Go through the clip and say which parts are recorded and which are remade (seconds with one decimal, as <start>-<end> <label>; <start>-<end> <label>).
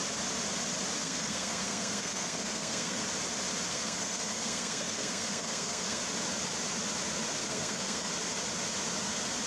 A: 0.0-1.0 recorded; 1.0-3.0 remade; 3.0-3.7 recorded; 3.7-6.0 remade; 6.0-7.4 recorded; 7.4-8.1 remade; 8.1-9.5 recorded